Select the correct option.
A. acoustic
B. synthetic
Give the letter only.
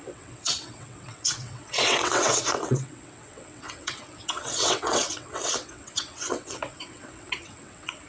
B